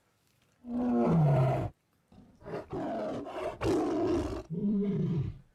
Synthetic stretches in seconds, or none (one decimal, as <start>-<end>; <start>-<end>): 4.6-5.5